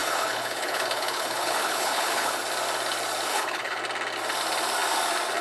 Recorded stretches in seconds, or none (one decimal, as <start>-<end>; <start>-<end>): 2.4-3.3; 3.8-5.4